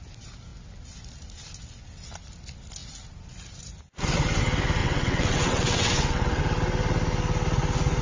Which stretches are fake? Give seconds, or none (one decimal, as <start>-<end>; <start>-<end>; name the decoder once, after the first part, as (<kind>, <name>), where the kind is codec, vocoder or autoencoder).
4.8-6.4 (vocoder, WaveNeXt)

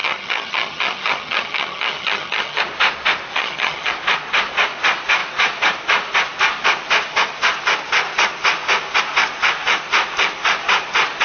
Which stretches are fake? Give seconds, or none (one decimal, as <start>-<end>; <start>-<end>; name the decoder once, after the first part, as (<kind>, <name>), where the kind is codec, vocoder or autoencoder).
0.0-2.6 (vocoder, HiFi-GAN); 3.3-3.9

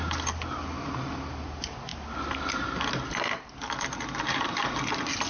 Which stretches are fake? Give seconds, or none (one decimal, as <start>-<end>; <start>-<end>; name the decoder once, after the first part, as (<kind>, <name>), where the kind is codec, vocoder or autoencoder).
none